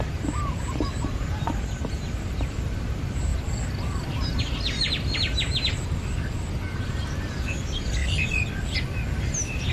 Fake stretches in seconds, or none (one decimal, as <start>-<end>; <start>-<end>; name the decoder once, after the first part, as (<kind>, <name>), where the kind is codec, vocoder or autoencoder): 0.0-3.3 (vocoder, BigVGAN v2); 4.4-8.0